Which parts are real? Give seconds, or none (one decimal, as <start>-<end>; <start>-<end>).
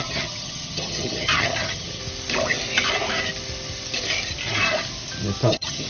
2.0-5.5